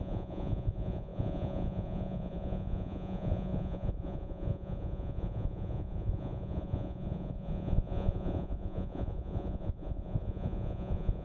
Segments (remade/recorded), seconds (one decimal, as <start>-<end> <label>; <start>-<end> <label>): 0.0-11.2 remade